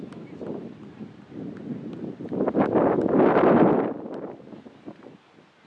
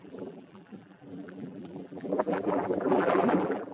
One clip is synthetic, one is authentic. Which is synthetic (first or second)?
second